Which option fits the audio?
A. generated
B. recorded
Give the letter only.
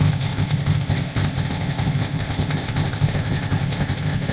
A